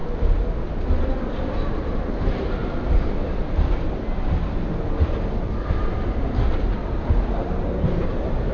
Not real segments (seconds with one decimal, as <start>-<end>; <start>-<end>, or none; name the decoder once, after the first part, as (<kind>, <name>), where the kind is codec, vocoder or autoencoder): 1.2-2.6 (vocoder, BigVGAN v2); 5.7-8.5